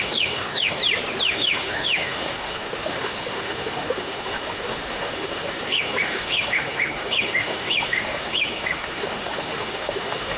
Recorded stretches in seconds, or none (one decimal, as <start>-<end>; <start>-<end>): 0.8-1.3

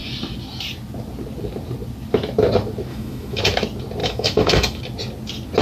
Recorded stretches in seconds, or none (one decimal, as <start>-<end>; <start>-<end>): 0.0-2.9; 3.4-4.0; 4.8-5.6

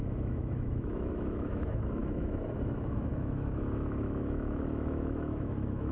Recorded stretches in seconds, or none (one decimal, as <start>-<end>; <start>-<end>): none

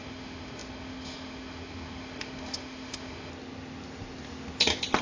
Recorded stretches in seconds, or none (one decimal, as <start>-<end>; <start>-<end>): 3.3-5.0

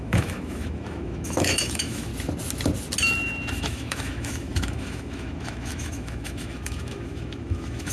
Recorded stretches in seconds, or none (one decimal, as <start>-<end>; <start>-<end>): 2.1-3.5

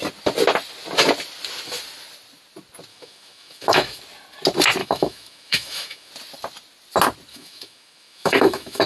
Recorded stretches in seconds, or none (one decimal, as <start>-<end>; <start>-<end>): 0.0-2.9; 4.0-4.8; 6.1-7.3

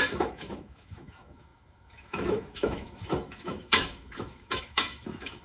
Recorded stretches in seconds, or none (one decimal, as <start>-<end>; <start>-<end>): none